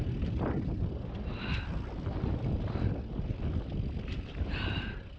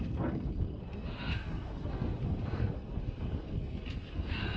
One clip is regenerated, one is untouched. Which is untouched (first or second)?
first